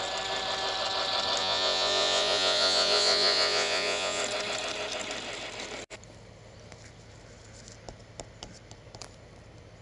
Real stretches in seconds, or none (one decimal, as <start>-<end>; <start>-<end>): 0.0-1.4; 4.2-9.8